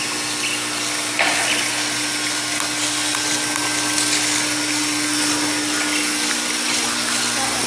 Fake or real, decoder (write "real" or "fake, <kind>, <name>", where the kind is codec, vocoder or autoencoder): real